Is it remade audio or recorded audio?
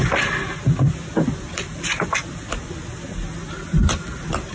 recorded